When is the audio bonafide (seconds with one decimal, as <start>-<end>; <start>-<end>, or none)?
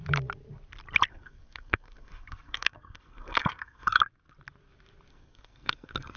0.0-1.1; 4.0-5.1